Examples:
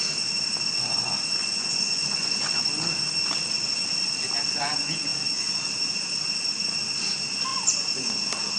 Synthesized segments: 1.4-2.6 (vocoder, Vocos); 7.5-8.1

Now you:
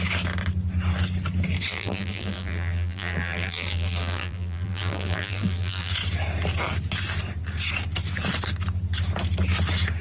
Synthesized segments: 1.7-5.9 (vocoder, BigVGAN v2)

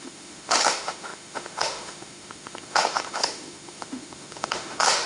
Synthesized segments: 0.0-5.1 (autoencoder, DAC-VAE)

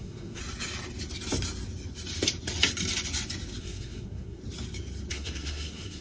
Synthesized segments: 0.0-0.4 (codec, SNAC); 3.6-4.4; 5.1-6.0

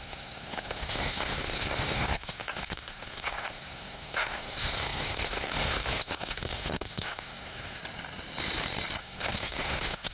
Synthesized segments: 0.0-7.8 (codec, SNAC); 9.0-10.1